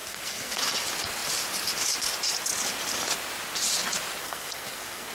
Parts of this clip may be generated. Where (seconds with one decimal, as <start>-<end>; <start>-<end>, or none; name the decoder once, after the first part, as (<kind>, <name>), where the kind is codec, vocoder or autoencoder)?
0.0-0.6 (codec, SNAC); 4.2-5.1